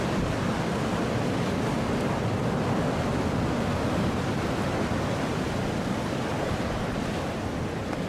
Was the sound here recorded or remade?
recorded